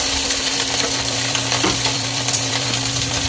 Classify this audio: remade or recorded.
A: remade